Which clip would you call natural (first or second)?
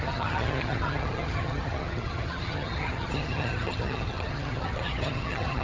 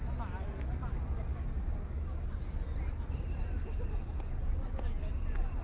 second